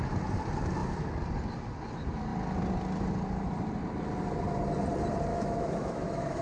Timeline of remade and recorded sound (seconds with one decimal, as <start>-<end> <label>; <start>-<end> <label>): 0.0-5.3 recorded; 5.3-6.4 remade